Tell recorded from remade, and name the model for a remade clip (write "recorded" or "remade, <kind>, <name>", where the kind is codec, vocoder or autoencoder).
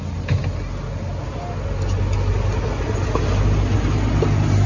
recorded